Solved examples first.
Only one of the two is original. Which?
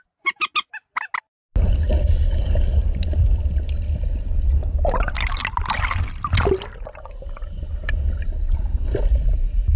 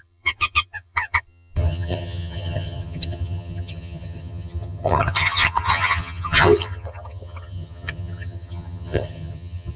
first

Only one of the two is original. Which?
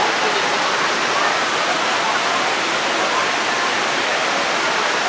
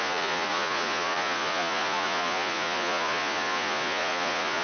first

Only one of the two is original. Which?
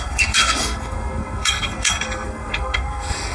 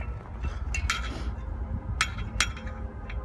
second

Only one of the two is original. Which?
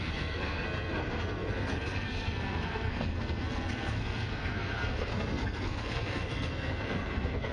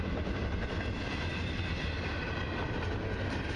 second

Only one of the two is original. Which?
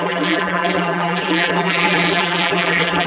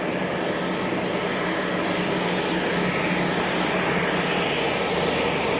second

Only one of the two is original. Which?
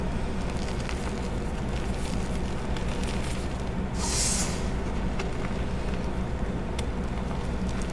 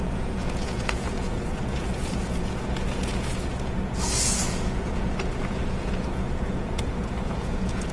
first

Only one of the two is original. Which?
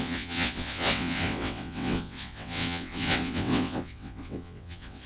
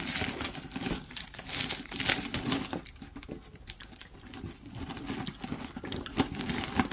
second